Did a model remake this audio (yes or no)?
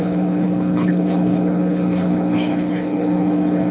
yes